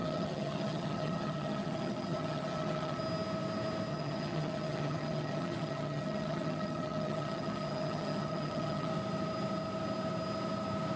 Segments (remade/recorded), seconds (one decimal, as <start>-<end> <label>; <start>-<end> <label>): 0.0-3.0 remade; 3.0-3.9 recorded; 3.9-8.9 remade; 8.9-11.0 recorded